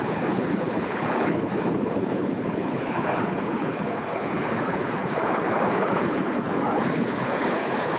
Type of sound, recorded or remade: remade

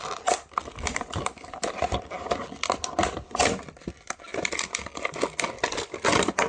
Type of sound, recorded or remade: recorded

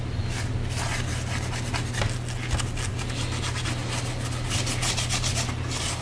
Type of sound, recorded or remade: recorded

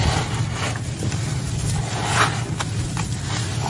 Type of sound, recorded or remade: recorded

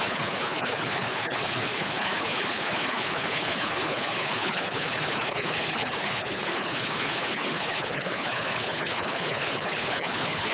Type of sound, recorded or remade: remade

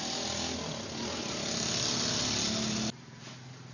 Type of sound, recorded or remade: recorded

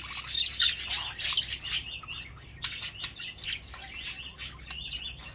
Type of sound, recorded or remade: recorded